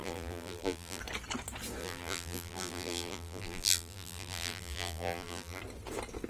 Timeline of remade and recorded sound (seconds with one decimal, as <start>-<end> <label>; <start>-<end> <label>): 0.0-1.0 remade; 1.0-1.8 recorded; 1.8-5.6 remade; 5.6-6.3 recorded